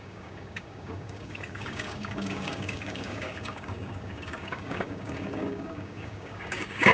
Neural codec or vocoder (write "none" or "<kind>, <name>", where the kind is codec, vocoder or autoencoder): codec, DAC